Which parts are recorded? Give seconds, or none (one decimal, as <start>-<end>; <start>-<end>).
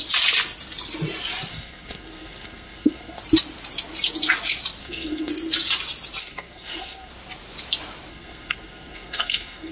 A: 0.0-1.5; 3.2-4.8; 5.3-6.2; 7.1-8.1